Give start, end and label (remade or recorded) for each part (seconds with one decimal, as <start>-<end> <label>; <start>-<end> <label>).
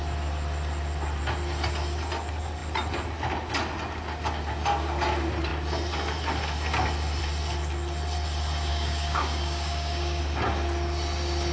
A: 0.0-8.7 recorded; 8.7-10.2 remade; 10.2-11.5 recorded